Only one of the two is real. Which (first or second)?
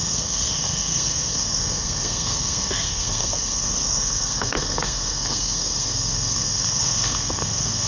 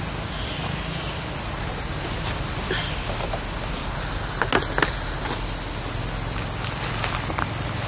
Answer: second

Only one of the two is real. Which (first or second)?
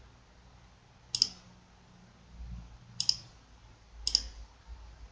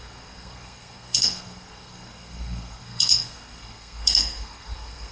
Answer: first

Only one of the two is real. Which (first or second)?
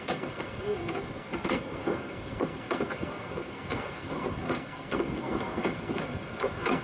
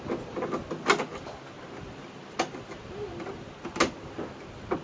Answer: second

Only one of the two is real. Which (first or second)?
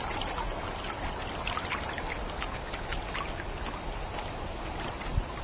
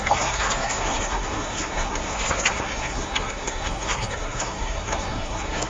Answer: first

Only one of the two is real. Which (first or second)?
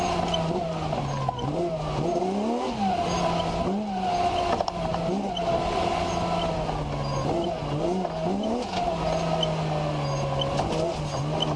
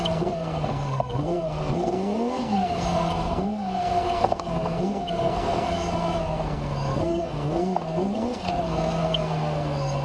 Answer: first